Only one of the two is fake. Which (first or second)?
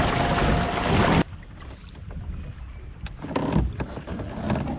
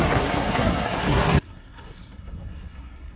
second